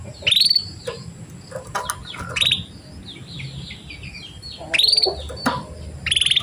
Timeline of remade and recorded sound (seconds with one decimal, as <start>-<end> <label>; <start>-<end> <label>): 0.0-6.4 recorded